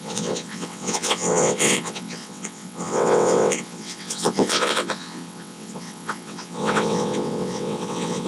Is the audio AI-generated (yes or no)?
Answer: yes